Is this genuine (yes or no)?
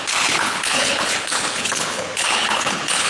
no